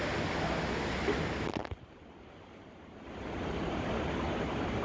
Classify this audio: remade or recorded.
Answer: recorded